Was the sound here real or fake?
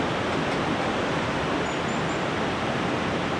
real